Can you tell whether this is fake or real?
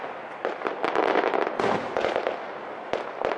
real